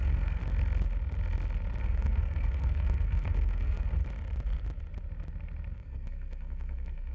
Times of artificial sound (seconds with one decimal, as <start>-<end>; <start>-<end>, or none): 0.0-0.4; 1.8-4.0; 5.7-7.1